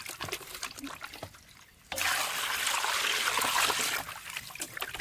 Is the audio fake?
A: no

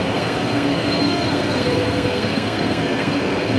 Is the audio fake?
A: yes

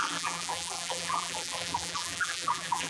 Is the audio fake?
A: yes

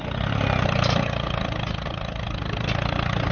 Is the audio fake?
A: no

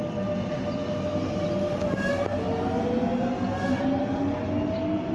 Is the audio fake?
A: no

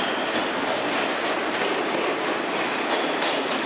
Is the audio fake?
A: no